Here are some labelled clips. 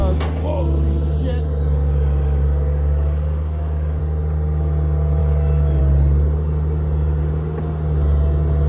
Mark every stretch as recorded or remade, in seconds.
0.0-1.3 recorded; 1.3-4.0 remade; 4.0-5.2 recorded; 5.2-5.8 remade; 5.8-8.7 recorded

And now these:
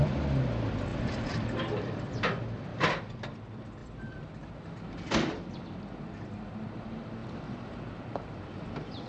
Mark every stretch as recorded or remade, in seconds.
0.0-0.9 recorded; 0.9-2.0 remade; 2.0-2.7 recorded; 2.7-3.4 remade; 3.4-3.8 recorded; 3.8-4.5 remade; 4.5-7.2 recorded; 7.2-8.0 remade; 8.0-9.1 recorded

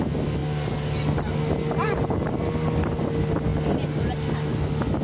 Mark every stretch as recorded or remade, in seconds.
0.0-5.0 recorded